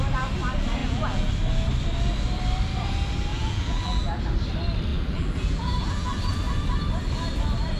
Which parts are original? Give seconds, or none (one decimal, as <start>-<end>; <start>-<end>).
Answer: 0.0-0.8; 1.3-3.3; 4.2-4.9; 6.2-7.8